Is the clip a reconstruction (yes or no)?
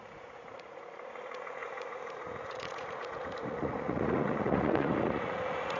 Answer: yes